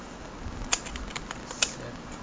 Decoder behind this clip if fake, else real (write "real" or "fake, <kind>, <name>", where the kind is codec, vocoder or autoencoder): real